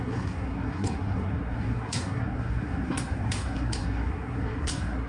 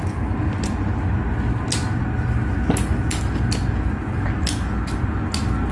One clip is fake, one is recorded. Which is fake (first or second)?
first